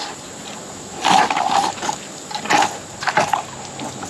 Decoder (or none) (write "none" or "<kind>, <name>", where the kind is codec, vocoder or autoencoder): none